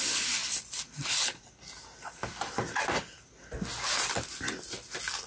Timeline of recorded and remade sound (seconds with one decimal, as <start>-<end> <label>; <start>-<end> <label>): 0.0-5.3 recorded